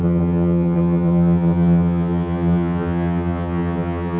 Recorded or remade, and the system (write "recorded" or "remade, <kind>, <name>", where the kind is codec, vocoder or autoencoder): remade, vocoder, HiFi-GAN